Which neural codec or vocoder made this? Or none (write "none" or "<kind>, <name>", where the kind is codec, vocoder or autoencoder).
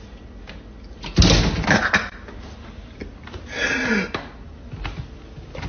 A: none